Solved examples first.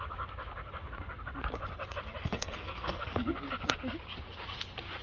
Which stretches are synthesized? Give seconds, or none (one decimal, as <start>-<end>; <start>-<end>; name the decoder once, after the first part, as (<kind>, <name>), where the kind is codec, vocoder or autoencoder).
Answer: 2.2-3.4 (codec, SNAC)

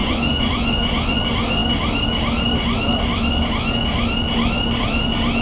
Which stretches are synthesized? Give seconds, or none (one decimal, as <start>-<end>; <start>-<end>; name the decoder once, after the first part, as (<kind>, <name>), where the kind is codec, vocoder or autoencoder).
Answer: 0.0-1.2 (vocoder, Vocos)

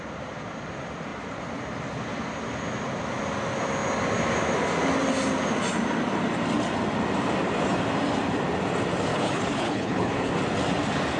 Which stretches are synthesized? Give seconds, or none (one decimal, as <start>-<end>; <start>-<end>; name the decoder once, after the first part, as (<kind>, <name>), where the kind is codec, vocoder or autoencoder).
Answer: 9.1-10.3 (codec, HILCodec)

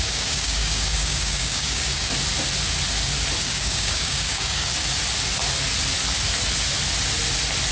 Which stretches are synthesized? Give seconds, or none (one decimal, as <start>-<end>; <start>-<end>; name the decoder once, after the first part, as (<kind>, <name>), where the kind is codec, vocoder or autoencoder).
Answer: 0.0-2.1 (codec, DAC); 3.4-4.7

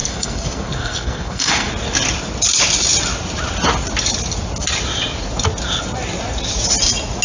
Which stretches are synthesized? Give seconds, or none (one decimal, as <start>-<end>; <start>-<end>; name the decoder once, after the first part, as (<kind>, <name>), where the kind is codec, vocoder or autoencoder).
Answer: 0.0-1.7 (codec, SNAC)

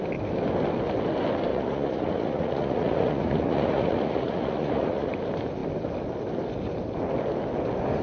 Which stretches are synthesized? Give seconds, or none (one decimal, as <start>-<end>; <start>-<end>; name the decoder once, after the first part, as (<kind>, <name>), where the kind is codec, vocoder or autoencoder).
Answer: 1.5-5.1 (vocoder, Vocos)

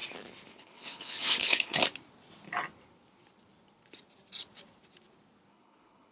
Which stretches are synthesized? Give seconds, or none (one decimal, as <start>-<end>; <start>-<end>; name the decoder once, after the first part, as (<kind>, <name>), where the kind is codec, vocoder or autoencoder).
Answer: 0.5-1.8 (codec, HILCodec); 5.5-6.1

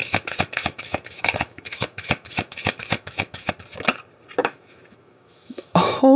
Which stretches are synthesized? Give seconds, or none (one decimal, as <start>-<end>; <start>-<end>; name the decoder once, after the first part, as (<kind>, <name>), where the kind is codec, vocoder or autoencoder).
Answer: 0.0-3.5 (autoencoder, DAC-VAE); 4.4-6.2